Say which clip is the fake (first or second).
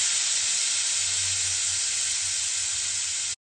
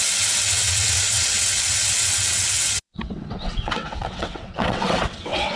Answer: second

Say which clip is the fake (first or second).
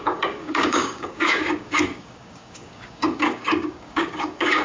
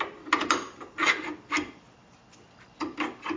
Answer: first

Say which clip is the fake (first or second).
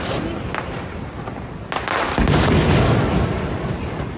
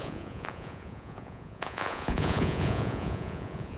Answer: second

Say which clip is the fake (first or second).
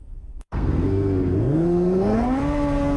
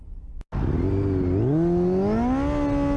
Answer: first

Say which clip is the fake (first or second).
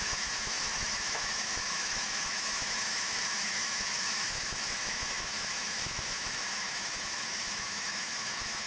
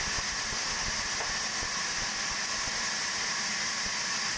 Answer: first